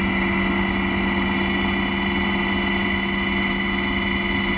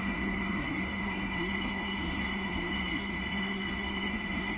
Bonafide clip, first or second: first